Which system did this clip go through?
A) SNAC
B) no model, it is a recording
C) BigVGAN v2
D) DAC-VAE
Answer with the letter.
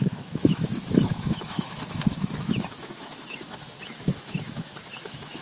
D